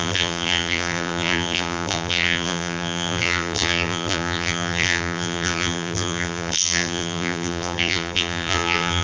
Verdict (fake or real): fake